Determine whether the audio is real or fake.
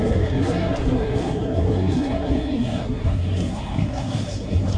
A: fake